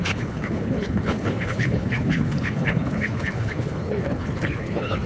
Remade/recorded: remade